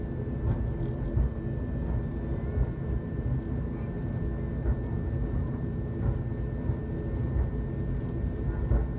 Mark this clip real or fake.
real